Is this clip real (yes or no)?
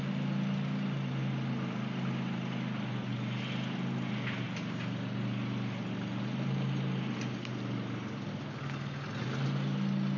yes